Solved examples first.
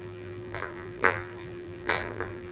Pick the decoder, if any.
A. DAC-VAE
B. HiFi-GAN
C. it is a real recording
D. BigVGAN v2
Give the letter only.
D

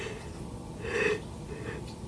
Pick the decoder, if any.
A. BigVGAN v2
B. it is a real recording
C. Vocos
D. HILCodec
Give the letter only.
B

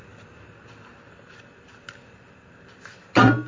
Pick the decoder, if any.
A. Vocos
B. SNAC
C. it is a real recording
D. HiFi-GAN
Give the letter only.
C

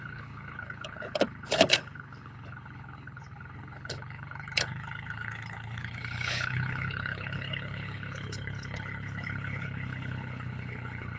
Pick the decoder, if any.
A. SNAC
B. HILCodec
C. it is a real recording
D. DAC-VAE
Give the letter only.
B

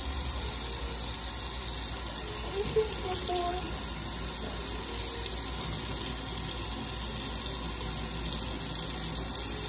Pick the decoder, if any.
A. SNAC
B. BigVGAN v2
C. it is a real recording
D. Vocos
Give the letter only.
C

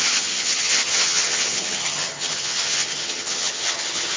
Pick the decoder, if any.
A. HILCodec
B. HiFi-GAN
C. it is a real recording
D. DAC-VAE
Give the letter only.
B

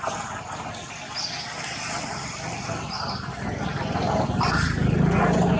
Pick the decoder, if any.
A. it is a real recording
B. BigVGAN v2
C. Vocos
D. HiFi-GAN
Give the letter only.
A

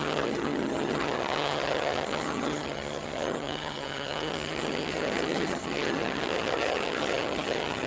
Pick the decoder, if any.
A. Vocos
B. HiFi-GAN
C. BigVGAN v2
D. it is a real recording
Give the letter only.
B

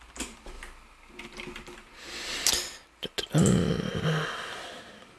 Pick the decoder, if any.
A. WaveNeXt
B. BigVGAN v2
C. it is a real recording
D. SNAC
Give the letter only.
C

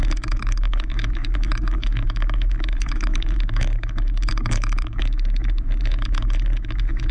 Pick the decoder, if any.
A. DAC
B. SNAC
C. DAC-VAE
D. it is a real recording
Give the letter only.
C